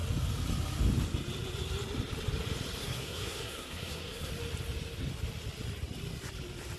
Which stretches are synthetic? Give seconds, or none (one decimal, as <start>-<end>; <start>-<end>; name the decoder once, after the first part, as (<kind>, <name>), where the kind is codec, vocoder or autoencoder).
2.8-4.3 (codec, SNAC)